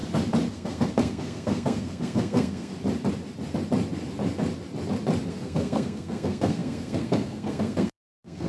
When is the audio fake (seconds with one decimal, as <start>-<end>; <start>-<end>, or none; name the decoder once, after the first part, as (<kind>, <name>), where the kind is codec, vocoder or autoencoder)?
0.5-2.7 (codec, SNAC); 5.3-8.5